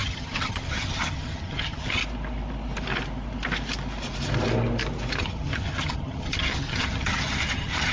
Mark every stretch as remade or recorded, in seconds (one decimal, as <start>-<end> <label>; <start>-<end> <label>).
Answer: 0.0-2.0 remade; 2.0-5.2 recorded; 5.2-7.9 remade